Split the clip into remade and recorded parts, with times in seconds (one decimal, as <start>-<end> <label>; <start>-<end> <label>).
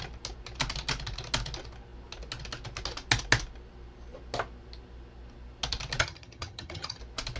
0.0-6.0 recorded; 6.0-7.0 remade; 7.0-7.4 recorded